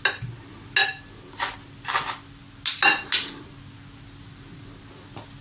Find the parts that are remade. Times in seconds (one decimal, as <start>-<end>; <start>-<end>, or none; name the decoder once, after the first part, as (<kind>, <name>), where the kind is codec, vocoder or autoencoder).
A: none